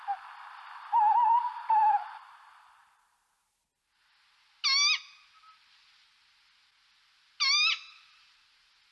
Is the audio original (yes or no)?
yes